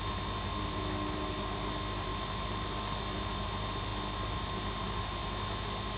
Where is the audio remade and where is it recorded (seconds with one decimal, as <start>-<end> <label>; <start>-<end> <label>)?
0.0-6.0 recorded